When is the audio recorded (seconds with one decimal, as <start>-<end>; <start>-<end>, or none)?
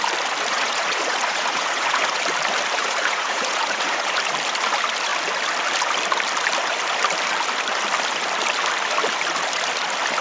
0.0-0.5; 2.2-2.8; 4.1-10.2